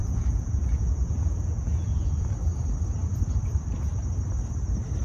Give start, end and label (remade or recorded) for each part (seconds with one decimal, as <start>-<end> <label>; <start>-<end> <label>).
0.0-2.1 remade; 2.1-5.0 recorded